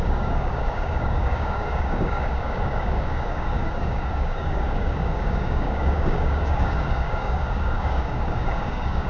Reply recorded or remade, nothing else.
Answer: remade